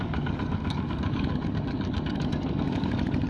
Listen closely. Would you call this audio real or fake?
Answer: fake